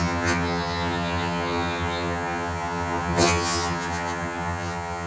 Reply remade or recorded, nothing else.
remade